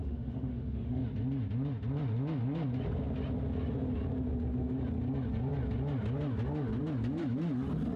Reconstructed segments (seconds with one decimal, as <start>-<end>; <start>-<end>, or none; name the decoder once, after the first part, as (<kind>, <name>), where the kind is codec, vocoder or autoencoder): 0.0-1.0 (autoencoder, DAC-VAE)